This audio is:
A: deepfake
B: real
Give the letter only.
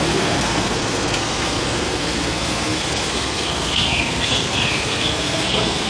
A